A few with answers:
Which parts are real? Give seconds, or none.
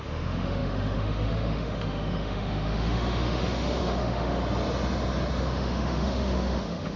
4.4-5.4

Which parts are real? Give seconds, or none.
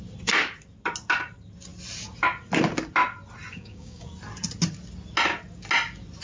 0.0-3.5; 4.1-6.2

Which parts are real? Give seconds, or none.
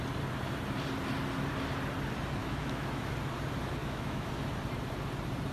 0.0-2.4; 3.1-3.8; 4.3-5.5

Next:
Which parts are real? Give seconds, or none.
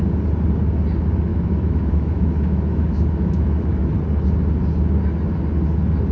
0.0-1.3; 3.8-6.1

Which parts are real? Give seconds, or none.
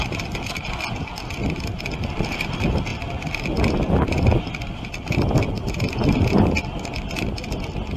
0.0-8.0